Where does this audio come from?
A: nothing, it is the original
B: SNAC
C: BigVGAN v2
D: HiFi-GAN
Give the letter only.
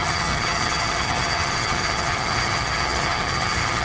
D